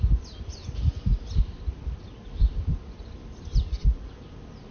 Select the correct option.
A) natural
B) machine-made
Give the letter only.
A